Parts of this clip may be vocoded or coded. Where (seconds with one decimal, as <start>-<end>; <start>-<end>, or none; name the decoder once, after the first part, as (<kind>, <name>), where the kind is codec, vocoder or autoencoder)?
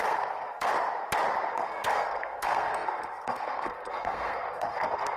0.0-0.7 (codec, SNAC); 1.5-5.2